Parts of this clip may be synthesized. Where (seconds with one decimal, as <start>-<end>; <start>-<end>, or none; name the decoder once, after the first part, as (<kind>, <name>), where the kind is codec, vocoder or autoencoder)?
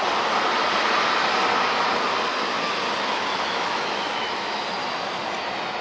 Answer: 2.3-4.8 (autoencoder, DAC-VAE)